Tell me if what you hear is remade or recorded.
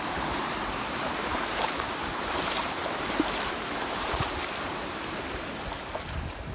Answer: remade